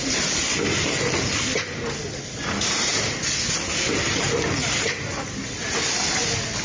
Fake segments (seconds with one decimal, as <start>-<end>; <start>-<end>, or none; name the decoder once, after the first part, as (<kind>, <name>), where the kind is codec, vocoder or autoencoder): none